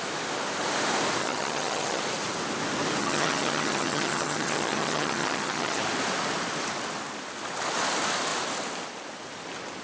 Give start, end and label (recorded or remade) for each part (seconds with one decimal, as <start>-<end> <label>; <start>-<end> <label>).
0.0-1.2 recorded; 1.2-2.0 remade; 2.0-3.0 recorded; 3.0-5.8 remade; 5.8-9.8 recorded